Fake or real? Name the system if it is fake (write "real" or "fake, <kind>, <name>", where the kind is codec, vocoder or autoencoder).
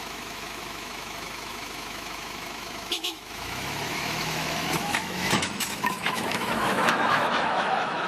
fake, autoencoder, DAC-VAE